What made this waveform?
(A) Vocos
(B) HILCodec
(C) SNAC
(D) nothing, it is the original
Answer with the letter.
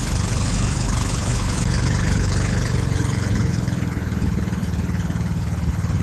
B